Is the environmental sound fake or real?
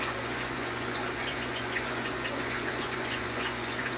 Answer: fake